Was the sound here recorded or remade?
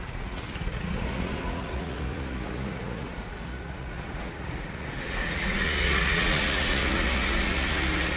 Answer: remade